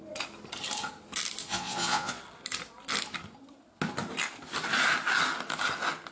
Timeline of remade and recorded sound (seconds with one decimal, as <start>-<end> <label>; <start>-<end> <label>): 0.0-1.4 recorded; 1.4-2.2 remade; 2.2-6.1 recorded